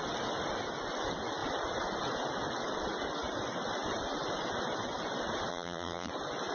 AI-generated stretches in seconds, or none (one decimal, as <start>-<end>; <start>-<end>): 5.5-6.1